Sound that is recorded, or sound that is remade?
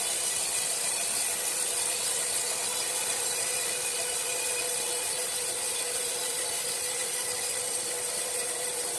recorded